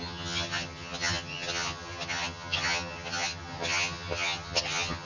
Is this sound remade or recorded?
remade